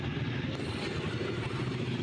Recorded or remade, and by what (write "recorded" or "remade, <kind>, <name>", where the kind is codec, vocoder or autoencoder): recorded